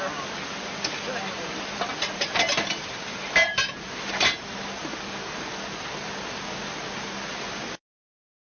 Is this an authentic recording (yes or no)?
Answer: yes